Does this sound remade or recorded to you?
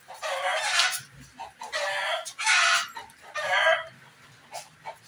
recorded